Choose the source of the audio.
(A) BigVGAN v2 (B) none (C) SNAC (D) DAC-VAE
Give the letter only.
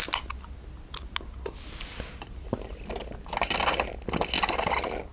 B